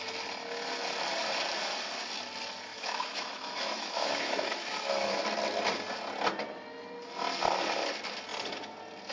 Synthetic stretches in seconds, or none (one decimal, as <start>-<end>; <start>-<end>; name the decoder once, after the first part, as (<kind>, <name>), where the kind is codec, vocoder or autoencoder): 2.7-5.2 (autoencoder, DAC-VAE)